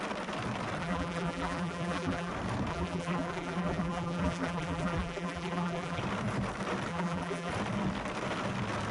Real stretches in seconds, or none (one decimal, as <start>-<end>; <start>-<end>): 0.0-0.8; 2.3-2.7; 6.0-6.9; 7.5-8.9